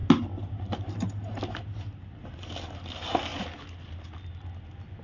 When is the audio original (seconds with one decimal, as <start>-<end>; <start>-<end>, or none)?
0.0-5.0